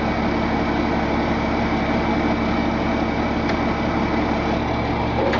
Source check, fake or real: real